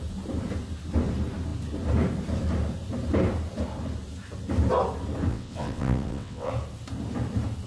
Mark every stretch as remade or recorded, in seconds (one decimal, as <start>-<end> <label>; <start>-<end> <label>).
0.0-5.3 recorded; 5.3-6.5 remade; 6.5-7.7 recorded